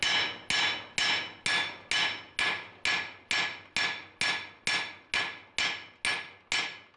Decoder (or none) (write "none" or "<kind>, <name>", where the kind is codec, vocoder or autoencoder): none